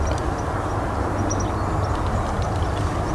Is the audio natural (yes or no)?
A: yes